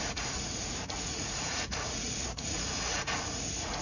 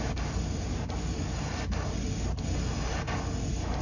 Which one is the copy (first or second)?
first